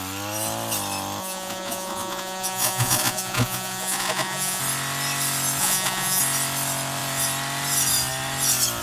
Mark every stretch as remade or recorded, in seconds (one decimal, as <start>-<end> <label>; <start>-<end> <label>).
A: 0.0-1.2 recorded; 1.2-4.6 remade; 4.6-5.6 recorded; 5.6-6.2 remade; 6.2-8.8 recorded